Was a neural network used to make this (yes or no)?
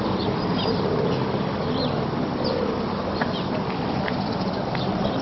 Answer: no